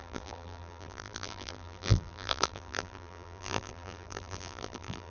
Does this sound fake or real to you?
fake